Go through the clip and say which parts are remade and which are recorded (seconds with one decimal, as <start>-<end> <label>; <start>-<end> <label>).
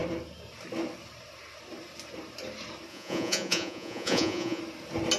0.0-2.9 recorded; 2.9-4.6 remade; 4.6-5.2 recorded